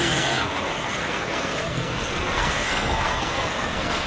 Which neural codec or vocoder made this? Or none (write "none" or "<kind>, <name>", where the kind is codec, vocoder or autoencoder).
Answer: codec, SNAC